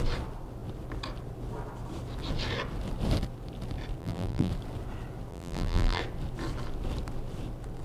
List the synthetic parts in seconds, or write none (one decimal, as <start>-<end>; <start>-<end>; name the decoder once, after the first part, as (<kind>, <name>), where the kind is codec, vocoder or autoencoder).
4.0-4.5 (vocoder, BigVGAN v2); 5.3-6.0